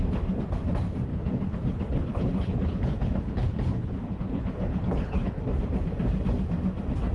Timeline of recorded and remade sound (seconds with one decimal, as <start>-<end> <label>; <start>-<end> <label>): 0.0-1.1 recorded; 1.1-5.4 remade; 5.4-7.1 recorded